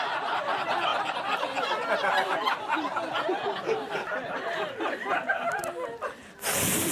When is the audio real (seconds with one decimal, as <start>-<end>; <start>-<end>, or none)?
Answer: 0.0-6.9